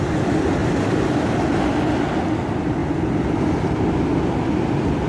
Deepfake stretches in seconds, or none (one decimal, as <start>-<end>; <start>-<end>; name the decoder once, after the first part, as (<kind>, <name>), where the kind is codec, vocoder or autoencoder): none